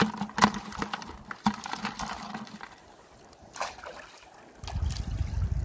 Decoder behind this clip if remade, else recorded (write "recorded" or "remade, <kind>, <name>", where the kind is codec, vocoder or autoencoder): recorded